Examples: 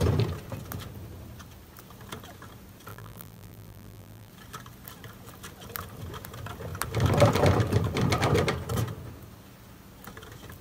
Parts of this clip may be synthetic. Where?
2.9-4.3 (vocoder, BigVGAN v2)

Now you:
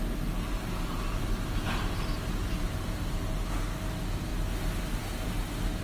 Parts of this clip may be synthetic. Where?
2.4-3.3 (vocoder, BigVGAN v2)